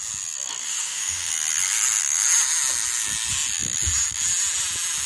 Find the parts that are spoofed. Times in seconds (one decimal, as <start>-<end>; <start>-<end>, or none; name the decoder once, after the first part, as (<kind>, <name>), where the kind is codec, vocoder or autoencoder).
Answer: 0.6-1.3 (autoencoder, DAC-VAE)